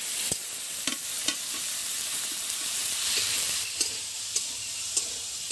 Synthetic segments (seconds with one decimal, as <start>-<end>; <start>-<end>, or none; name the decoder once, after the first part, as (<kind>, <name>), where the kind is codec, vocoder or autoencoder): 0.4-3.7 (vocoder, BigVGAN v2)